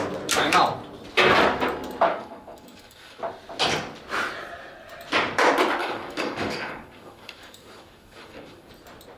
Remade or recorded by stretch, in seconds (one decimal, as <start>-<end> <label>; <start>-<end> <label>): 0.0-2.1 recorded; 2.1-3.2 remade; 3.2-5.8 recorded; 5.8-8.7 remade; 8.7-9.2 recorded